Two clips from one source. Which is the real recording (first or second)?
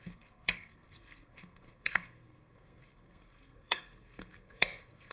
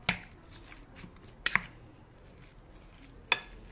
second